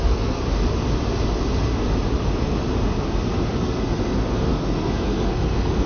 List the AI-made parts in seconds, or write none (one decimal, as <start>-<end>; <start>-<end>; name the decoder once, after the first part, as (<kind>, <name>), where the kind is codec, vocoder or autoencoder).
0.0-0.4 (codec, SNAC); 3.6-5.9